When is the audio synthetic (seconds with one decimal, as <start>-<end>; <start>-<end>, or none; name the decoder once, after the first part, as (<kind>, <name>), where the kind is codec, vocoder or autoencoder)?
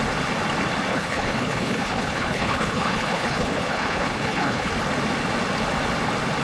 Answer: 0.9-4.7 (codec, HILCodec)